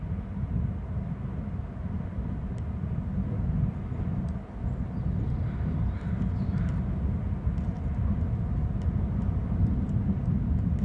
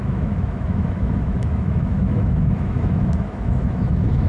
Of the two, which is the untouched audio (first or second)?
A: first